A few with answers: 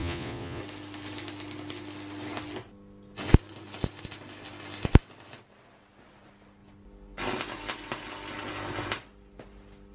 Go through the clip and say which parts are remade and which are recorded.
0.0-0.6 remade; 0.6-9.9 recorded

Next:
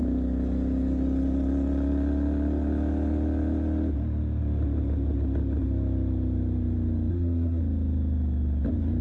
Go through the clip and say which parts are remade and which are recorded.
0.0-7.1 recorded; 7.1-7.6 remade; 7.6-9.0 recorded

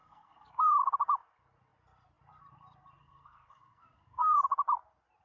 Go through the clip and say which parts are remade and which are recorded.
0.0-0.6 remade; 0.6-3.0 recorded; 3.0-4.4 remade; 4.4-5.2 recorded

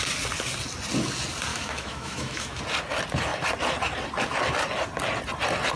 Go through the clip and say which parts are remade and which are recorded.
0.0-1.5 recorded; 1.5-2.6 remade; 2.6-5.8 recorded

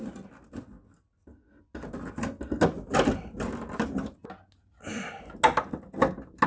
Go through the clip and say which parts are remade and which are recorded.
0.0-6.5 recorded